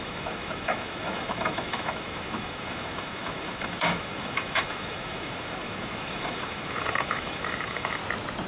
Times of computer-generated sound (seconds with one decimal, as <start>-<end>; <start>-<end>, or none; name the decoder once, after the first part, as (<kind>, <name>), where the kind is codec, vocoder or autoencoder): 0.0-8.0 (autoencoder, DAC-VAE)